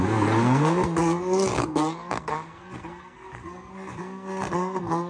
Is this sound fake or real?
fake